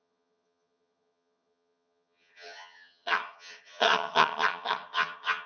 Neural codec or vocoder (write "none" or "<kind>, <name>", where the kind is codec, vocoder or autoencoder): vocoder, HiFi-GAN